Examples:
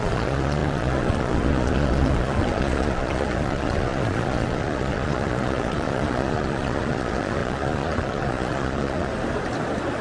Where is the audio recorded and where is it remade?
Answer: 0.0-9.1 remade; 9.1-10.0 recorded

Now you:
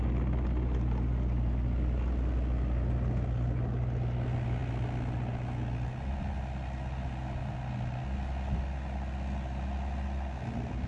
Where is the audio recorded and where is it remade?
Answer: 0.0-10.9 recorded

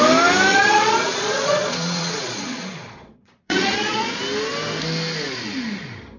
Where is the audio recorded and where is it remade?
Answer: 0.0-0.5 recorded; 0.5-4.2 remade; 4.2-6.2 recorded